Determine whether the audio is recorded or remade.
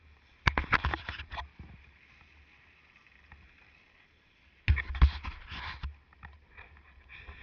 recorded